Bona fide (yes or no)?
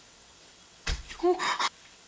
no